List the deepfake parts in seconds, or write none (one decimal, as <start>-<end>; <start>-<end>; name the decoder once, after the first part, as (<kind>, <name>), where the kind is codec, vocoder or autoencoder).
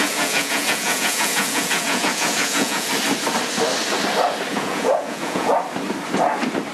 0.0-2.9 (vocoder, Vocos); 4.5-5.5